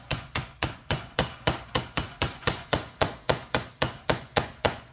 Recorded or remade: remade